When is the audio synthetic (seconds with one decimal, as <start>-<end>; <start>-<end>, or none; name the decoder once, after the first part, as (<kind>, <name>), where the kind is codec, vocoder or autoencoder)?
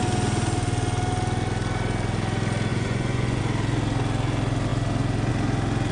2.7-3.4 (vocoder, Vocos)